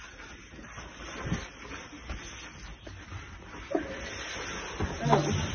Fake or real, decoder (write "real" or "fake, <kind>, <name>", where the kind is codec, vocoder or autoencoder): real